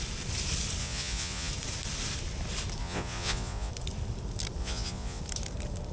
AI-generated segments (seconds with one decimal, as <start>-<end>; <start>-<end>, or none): 0.8-1.5; 2.8-3.7; 4.6-5.2